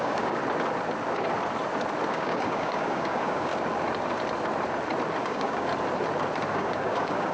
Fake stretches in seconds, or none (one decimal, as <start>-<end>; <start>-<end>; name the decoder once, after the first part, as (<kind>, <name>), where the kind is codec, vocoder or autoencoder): 0.0-0.4 (codec, DAC); 2.1-3.5; 5.2-5.7; 6.5-7.3